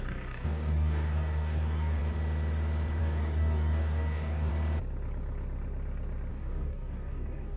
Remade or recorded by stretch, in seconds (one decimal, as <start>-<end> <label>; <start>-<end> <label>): 0.0-2.0 remade; 2.0-3.0 recorded; 3.0-4.5 remade; 4.5-6.3 recorded; 6.3-7.6 remade